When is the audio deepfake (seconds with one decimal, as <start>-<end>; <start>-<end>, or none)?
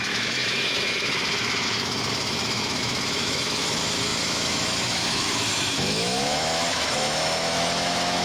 0.0-8.2